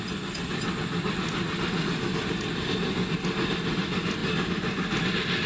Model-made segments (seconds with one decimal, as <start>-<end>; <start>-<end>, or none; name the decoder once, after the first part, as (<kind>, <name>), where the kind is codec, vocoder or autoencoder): none